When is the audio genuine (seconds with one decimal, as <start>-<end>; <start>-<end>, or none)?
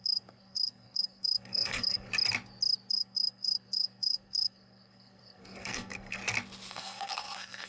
2.1-2.9; 6.2-6.7